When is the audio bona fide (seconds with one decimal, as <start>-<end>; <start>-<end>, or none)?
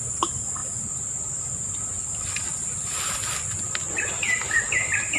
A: 0.0-5.2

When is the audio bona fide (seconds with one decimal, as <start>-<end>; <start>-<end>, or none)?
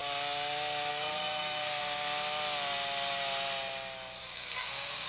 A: 0.0-0.9; 1.8-4.2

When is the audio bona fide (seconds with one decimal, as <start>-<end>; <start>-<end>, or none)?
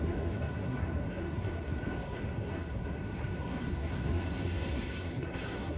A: none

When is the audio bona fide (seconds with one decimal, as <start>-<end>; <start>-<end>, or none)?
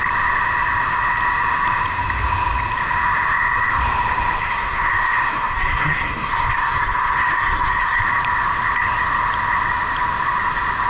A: 0.0-4.4; 8.0-10.9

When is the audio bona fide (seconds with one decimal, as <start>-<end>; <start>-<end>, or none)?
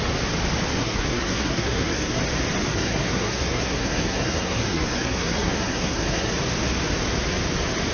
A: 0.0-0.8; 2.2-2.7; 6.3-7.9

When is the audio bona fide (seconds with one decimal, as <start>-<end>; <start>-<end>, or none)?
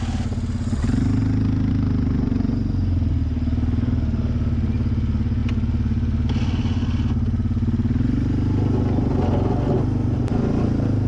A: 0.0-11.1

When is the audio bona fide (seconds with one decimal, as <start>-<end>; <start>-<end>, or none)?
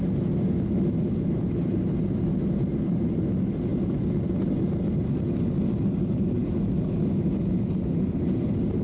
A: 0.0-8.8